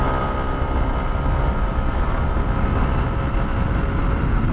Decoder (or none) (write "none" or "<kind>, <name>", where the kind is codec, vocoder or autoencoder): none